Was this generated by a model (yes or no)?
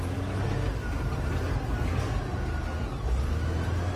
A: no